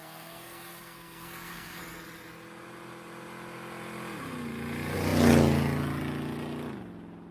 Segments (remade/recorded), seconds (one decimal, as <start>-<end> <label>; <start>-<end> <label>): 0.0-1.8 remade; 1.8-7.3 recorded